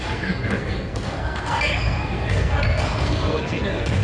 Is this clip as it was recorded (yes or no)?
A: no